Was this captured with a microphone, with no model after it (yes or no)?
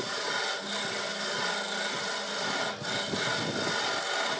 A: yes